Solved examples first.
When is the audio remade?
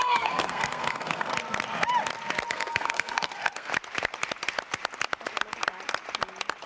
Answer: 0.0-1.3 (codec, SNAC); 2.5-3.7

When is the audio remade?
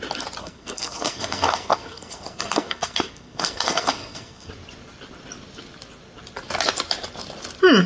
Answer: 0.4-4.5 (codec, SNAC)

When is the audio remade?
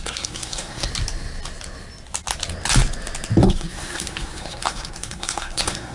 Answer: 0.0-0.9 (codec, SNAC); 3.4-5.9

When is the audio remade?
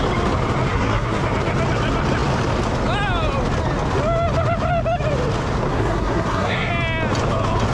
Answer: 0.7-1.2 (codec, SNAC); 5.7-6.7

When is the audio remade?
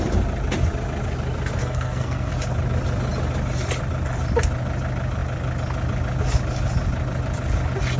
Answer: 1.6-2.3 (codec, SNAC)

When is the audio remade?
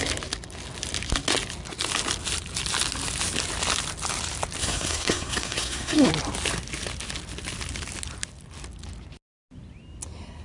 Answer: 4.6-6.1 (codec, SNAC)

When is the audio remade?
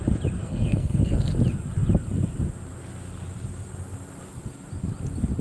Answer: 0.4-1.3 (codec, SNAC)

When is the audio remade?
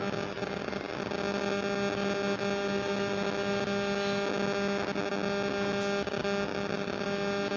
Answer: none